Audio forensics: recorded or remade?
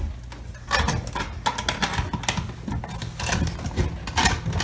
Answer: recorded